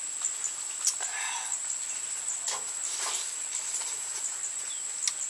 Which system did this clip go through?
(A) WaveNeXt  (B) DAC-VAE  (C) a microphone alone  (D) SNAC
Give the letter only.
C